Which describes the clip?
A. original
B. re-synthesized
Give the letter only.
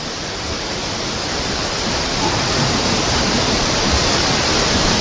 B